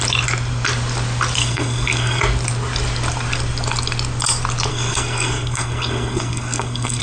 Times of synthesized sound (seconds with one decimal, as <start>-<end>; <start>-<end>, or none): 1.4-2.2; 4.7-7.0

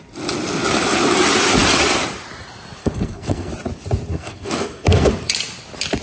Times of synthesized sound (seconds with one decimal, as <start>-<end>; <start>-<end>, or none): 2.8-3.5; 4.1-5.1

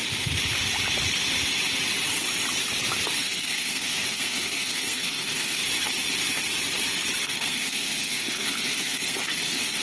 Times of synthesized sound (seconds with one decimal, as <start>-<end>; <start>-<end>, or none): 3.2-5.6; 7.2-9.8

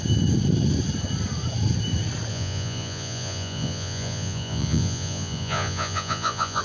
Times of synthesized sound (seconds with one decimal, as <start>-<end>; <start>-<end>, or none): 2.3-6.6

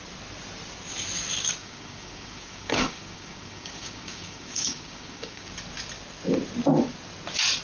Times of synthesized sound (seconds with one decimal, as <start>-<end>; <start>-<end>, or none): 1.6-5.5

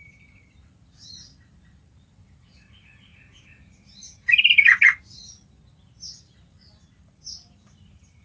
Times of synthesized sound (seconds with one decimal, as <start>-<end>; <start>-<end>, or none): 0.0-3.1; 5.2-8.2

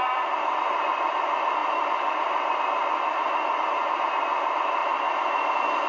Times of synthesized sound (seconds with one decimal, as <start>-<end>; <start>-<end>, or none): none

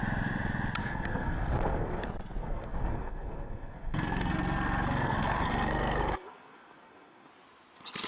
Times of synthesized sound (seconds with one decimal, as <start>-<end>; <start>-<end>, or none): 0.8-2.0; 2.4-7.3